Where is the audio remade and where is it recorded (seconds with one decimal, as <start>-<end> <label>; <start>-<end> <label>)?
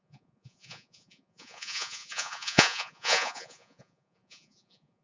0.0-5.0 remade